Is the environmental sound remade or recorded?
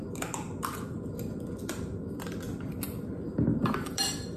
recorded